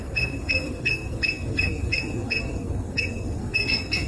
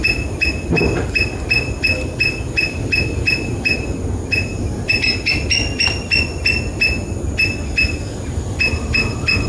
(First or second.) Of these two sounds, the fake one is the first